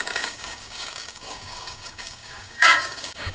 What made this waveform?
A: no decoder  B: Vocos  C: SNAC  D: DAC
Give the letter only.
D